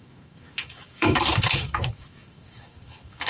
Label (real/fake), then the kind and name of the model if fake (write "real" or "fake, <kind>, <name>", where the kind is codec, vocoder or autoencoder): fake, autoencoder, DAC-VAE